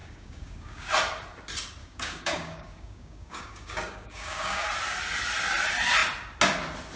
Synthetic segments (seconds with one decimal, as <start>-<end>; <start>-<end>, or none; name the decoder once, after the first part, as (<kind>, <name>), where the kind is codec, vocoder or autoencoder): 0.0-0.9 (codec, DAC); 1.8-4.7